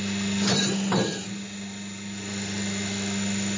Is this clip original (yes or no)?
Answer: yes